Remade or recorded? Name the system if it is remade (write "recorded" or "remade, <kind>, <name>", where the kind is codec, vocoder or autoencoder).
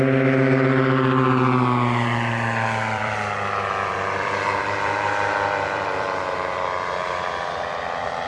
remade, vocoder, BigVGAN v2